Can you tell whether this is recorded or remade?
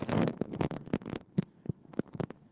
remade